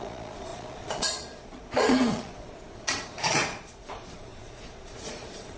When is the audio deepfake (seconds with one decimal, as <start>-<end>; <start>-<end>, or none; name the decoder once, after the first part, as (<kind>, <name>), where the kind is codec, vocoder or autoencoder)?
0.0-5.6 (vocoder, Vocos)

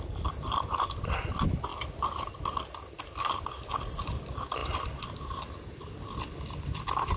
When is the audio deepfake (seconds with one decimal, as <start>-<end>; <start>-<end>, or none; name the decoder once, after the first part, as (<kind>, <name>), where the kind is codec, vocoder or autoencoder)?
none

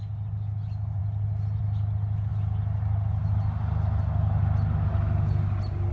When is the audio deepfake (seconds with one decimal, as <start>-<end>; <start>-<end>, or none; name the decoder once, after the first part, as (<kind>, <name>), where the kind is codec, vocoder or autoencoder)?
none

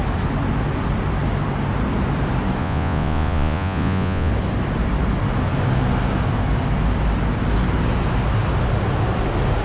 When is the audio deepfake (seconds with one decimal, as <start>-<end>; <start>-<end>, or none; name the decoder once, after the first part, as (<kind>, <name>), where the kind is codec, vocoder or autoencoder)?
2.6-4.3 (vocoder, Vocos)

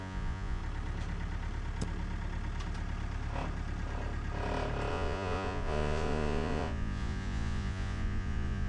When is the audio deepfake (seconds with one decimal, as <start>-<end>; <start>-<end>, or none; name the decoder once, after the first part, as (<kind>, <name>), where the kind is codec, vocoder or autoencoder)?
0.0-0.6 (vocoder, Vocos); 4.9-8.7

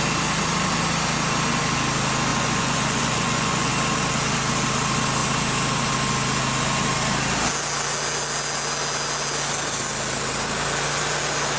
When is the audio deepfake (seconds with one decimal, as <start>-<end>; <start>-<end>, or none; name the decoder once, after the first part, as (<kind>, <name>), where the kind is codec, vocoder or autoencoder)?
2.3-3.7 (vocoder, Vocos)